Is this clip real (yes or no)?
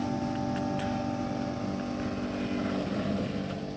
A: yes